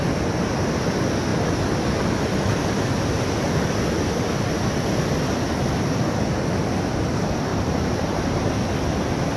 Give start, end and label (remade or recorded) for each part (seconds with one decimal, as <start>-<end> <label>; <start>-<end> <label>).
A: 0.0-7.5 recorded; 7.5-8.6 remade; 8.6-9.4 recorded